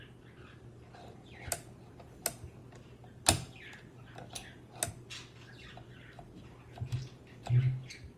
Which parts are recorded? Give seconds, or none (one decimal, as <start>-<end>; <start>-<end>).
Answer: 0.0-8.2